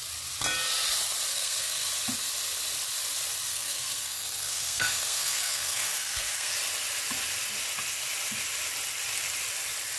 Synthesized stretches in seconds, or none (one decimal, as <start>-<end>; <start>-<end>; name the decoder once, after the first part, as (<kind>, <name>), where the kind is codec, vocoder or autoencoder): 1.3-1.9 (codec, SNAC); 3.5-6.5